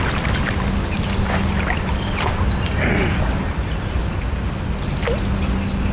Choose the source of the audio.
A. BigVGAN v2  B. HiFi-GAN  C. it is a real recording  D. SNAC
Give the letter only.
C